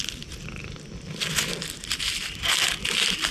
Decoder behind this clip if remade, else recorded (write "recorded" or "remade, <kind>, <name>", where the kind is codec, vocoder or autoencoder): recorded